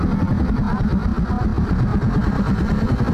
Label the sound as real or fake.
real